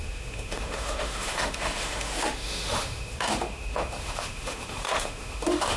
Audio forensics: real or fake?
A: fake